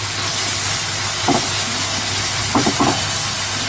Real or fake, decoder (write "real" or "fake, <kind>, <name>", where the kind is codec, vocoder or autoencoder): real